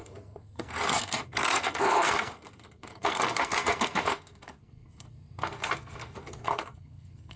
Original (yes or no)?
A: no